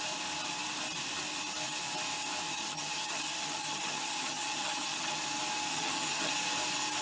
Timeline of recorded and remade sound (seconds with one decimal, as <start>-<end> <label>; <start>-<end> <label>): 0.0-2.5 recorded; 2.5-5.2 remade; 5.2-5.7 recorded; 5.7-6.3 remade; 6.3-7.0 recorded